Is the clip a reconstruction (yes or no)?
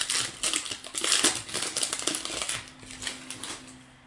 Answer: no